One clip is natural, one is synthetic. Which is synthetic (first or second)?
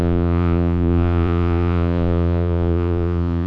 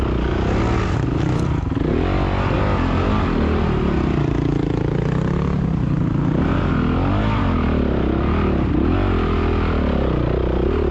first